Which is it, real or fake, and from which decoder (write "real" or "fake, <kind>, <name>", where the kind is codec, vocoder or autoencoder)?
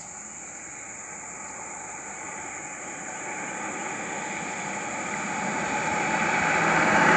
real